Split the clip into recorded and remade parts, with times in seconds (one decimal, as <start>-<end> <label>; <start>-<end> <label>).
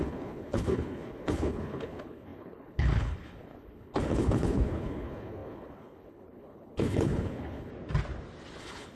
0.0-7.7 remade; 7.7-8.6 recorded; 8.6-9.0 remade